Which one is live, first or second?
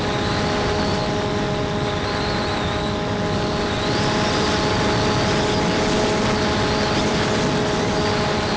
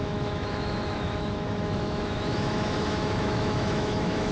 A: first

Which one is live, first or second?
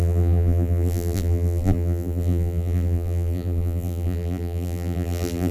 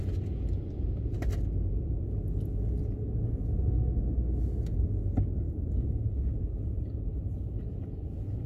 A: second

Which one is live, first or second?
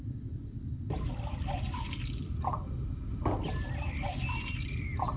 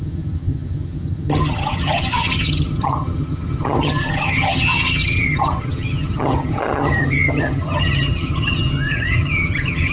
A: first